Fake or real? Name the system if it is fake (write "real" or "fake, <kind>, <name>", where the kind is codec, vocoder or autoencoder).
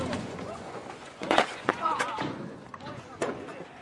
fake, vocoder, Vocos